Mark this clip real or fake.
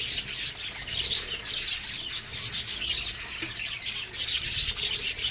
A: real